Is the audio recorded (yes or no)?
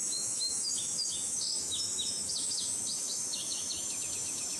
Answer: no